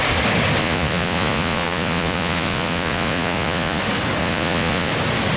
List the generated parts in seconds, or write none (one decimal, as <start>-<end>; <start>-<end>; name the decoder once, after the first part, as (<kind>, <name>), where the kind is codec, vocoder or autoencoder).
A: 0.6-3.8 (vocoder, Vocos); 4.2-4.9